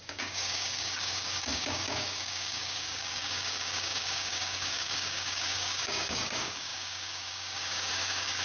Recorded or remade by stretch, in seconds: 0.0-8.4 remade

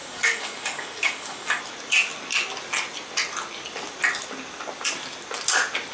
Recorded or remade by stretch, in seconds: 0.0-1.6 remade; 1.6-5.9 recorded

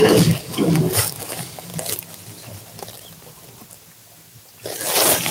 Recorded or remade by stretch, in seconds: 0.0-1.7 remade; 1.7-5.3 recorded